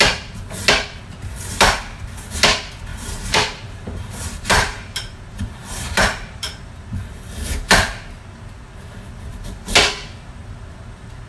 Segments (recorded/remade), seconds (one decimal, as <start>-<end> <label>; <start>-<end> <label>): 0.0-2.9 recorded; 2.9-6.7 remade; 6.7-11.3 recorded